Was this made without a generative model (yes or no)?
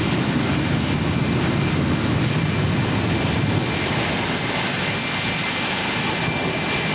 yes